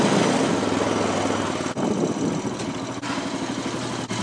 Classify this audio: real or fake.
real